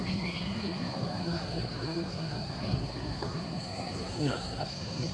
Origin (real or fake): fake